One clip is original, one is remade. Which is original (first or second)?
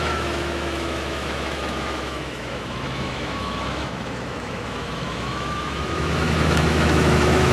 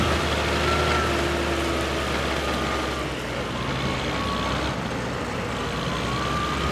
second